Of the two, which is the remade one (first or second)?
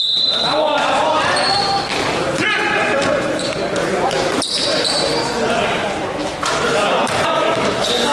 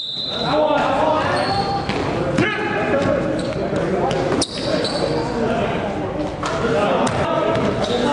first